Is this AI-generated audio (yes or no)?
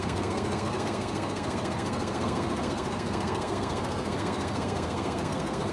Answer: yes